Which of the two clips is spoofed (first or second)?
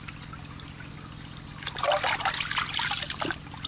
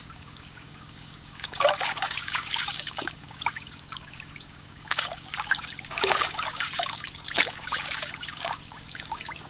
second